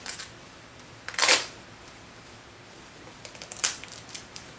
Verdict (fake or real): fake